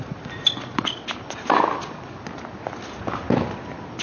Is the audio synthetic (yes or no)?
no